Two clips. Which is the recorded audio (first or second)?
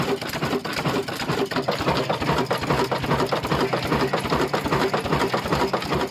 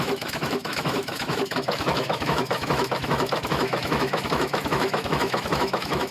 first